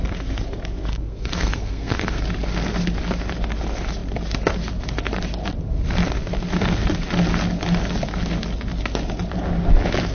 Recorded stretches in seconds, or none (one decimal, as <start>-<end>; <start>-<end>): 0.0-0.9; 2.2-10.1